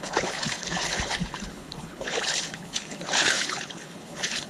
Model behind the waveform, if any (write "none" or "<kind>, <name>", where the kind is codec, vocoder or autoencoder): codec, HILCodec